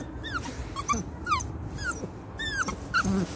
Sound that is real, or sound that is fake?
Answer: real